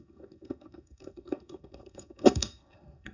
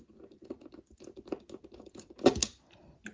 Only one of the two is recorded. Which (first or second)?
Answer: second